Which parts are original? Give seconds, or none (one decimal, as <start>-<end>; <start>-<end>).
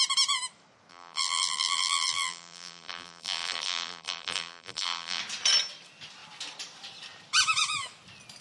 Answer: 0.0-0.9; 5.2-8.4